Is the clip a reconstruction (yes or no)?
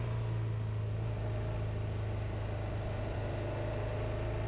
no